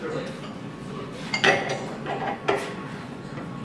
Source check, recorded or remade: remade